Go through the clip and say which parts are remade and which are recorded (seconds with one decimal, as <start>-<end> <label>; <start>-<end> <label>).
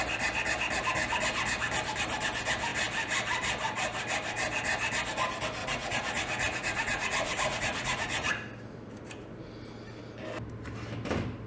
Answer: 0.0-5.6 recorded; 5.6-8.3 remade; 8.3-11.5 recorded